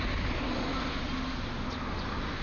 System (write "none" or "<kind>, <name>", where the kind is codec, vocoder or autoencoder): none